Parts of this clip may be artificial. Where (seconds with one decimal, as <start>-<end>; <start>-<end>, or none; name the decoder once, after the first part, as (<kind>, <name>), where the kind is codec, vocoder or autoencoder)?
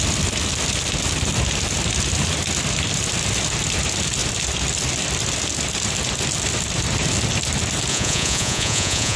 7.9-9.2 (vocoder, Vocos)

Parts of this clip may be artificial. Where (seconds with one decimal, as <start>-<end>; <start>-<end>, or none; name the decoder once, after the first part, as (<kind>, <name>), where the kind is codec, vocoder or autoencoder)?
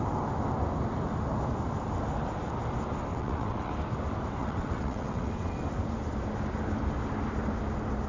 3.1-3.7 (vocoder, WaveNeXt); 4.4-5.6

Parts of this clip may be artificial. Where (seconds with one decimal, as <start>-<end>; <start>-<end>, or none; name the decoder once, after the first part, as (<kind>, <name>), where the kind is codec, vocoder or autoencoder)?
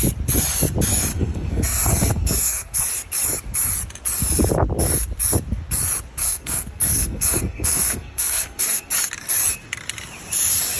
1.1-2.8 (codec, SNAC); 6.2-8.9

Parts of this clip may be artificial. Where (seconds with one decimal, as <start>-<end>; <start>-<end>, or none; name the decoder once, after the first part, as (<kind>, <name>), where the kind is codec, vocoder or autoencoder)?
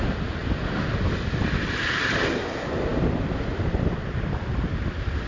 none